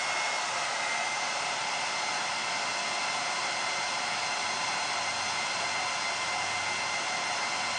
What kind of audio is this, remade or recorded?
recorded